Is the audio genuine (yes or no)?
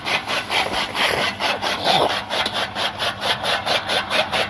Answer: yes